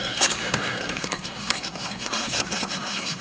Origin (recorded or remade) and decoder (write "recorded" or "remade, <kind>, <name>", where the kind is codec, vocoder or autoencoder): remade, codec, SNAC